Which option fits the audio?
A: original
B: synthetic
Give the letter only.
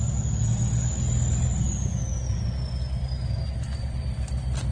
A